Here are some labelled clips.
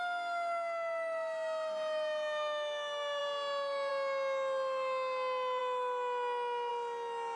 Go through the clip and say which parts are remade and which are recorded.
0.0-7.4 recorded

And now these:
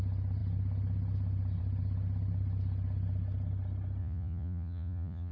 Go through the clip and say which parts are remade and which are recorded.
0.0-4.0 recorded; 4.0-5.3 remade